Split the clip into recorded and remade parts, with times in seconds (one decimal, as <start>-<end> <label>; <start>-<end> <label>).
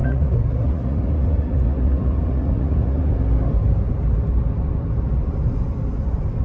0.0-3.1 remade; 3.1-6.4 recorded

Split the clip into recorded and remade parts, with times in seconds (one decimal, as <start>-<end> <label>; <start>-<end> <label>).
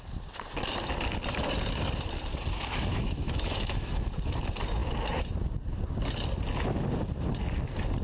0.0-2.9 recorded; 2.9-4.1 remade; 4.1-8.0 recorded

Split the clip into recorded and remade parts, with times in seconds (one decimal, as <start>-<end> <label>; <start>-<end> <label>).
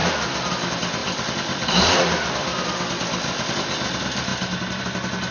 0.0-0.5 remade; 0.5-1.0 recorded; 1.0-2.7 remade; 2.7-5.3 recorded